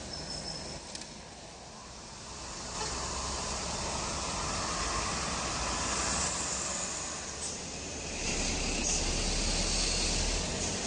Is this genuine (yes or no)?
yes